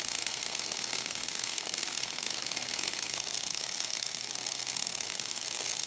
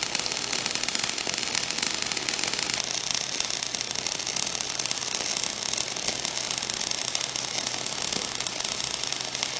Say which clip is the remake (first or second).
first